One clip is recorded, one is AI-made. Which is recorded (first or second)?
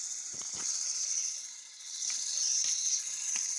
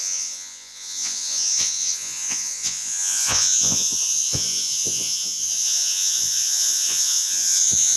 first